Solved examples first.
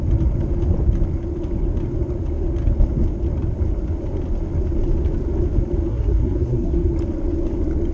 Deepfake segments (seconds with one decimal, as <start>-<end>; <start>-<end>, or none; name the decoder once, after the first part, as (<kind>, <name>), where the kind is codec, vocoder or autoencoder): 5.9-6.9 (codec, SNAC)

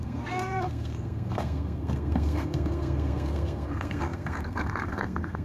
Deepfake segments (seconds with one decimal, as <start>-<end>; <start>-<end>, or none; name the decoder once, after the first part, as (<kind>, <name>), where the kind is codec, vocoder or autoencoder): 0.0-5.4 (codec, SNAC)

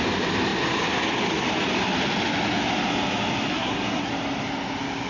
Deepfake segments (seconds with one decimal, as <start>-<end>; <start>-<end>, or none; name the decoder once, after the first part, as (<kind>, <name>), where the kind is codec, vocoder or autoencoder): 3.5-4.1 (codec, SNAC)

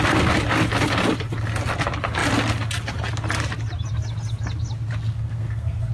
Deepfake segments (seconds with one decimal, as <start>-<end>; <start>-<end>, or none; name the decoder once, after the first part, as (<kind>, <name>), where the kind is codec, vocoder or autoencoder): 5.1-5.9 (codec, SNAC)

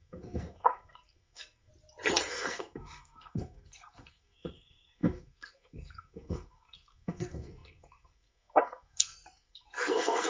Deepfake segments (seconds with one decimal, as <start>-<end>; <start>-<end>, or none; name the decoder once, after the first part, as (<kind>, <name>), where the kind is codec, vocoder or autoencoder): 0.0-1.7 (codec, SNAC); 2.3-10.3

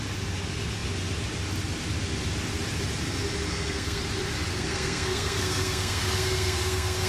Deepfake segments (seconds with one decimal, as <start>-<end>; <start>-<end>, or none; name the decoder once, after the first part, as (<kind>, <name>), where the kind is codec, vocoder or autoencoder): 3.5-4.0 (codec, SNAC); 4.5-7.1